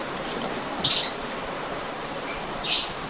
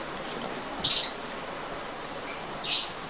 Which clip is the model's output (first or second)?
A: first